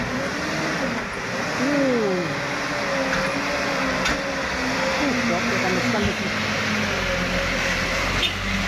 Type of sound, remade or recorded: recorded